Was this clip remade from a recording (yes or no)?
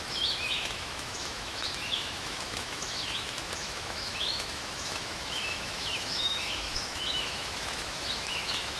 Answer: yes